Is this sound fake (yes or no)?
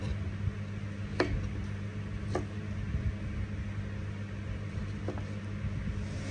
no